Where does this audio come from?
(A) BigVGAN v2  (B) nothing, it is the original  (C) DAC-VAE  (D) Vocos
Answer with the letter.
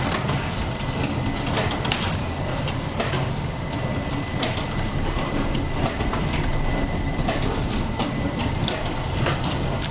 A